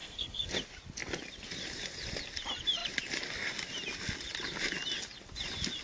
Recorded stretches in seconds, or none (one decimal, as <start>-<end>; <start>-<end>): 0.5-5.8